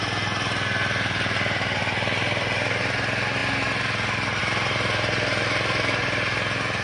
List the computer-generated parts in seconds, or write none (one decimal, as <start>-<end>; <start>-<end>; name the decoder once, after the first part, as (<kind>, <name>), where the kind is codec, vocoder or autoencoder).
none